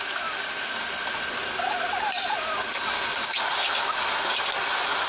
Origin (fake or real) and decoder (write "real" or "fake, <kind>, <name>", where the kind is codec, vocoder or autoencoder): real